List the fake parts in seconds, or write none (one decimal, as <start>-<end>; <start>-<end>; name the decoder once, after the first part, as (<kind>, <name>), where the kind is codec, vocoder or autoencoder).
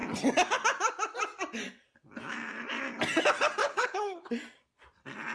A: 3.6-4.3 (codec, HILCodec)